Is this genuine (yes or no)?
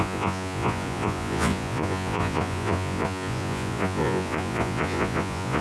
no